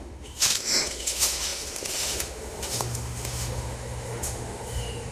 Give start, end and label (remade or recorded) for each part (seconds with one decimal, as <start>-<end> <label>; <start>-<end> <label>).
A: 0.0-5.1 remade

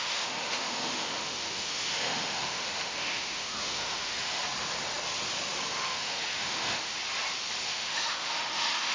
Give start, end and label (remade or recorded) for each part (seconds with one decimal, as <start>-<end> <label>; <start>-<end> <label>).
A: 0.0-4.4 remade; 4.4-5.7 recorded; 5.7-7.0 remade; 7.0-7.6 recorded; 7.6-8.9 remade

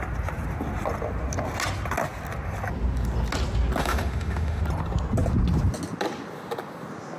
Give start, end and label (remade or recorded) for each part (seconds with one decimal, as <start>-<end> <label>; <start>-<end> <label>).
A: 0.0-3.8 recorded; 3.8-4.6 remade; 4.6-7.2 recorded

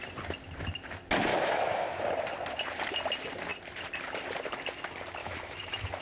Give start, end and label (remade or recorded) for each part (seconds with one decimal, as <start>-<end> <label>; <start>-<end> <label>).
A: 0.0-1.3 recorded; 1.3-2.0 remade; 2.0-5.2 recorded; 5.2-6.0 remade

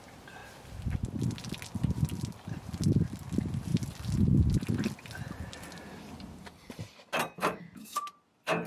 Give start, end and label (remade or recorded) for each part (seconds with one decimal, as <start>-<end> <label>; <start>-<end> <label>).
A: 0.0-7.5 recorded; 7.5-8.1 remade; 8.1-8.7 recorded

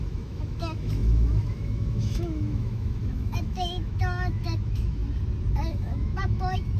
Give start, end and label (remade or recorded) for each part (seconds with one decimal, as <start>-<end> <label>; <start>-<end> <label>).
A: 0.0-5.0 remade; 5.0-5.5 recorded; 5.5-6.8 remade